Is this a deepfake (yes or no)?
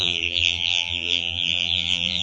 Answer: yes